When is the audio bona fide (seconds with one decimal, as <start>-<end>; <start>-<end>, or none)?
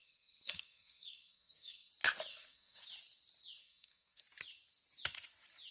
1.9-2.3; 2.8-3.6; 4.2-5.7